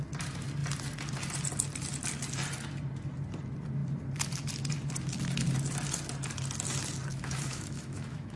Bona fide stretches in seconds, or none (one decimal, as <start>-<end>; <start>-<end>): 0.0-7.1